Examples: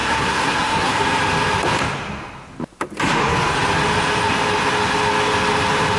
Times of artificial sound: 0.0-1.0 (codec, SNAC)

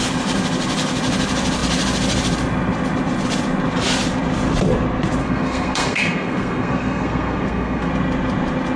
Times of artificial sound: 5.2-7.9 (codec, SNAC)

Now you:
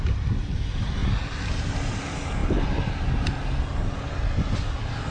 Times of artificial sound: none

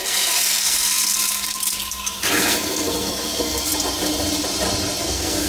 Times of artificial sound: 0.0-3.7 (codec, SNAC); 5.0-5.5

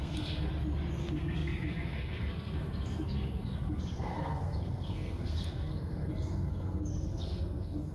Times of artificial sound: 0.0-0.5 (codec, SNAC); 1.0-7.9